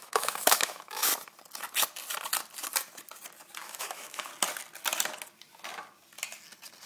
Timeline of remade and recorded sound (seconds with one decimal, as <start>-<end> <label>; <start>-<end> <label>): 0.0-1.1 remade; 1.1-3.6 recorded; 3.6-4.3 remade; 4.3-6.9 recorded